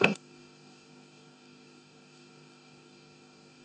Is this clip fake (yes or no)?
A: yes